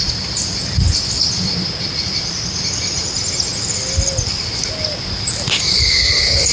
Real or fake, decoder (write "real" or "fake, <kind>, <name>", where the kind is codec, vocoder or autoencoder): real